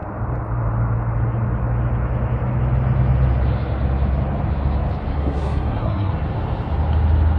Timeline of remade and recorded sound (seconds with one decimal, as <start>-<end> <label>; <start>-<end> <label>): 0.0-5.1 recorded; 5.1-6.1 remade; 6.1-7.4 recorded